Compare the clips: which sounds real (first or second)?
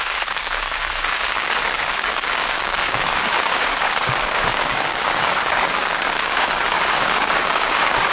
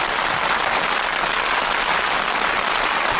second